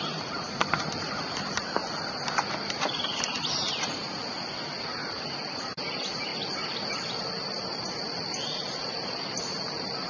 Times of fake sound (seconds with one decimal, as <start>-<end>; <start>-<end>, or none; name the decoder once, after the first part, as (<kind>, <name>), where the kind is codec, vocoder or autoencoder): 0.0-1.8 (vocoder, BigVGAN v2); 3.5-4.2; 5.8-6.3; 6.9-10.1